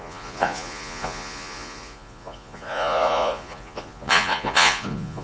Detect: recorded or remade remade